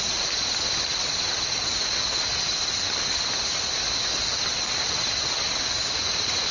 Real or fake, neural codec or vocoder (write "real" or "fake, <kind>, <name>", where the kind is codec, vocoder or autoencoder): real